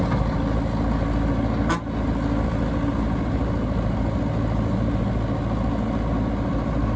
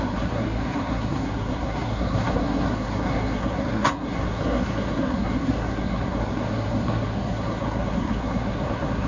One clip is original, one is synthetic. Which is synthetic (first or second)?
second